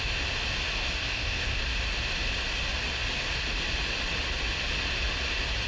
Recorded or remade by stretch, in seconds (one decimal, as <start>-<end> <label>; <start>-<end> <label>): 0.0-1.0 recorded; 1.0-1.6 remade; 1.6-5.7 recorded